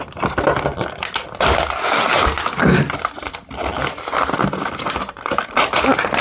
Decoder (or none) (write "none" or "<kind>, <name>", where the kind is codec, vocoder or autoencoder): none